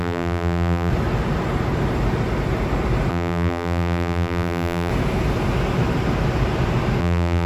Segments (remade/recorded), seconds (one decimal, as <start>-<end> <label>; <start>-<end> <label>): 0.0-0.9 remade; 0.9-3.1 recorded; 3.1-4.9 remade; 4.9-7.0 recorded; 7.0-7.5 remade